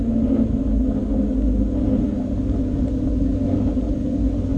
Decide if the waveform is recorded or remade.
recorded